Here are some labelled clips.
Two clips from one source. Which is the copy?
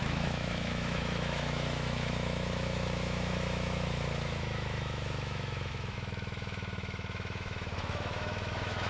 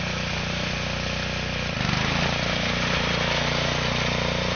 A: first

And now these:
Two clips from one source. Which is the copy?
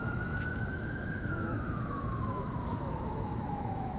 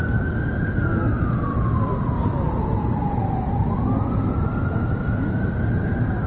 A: first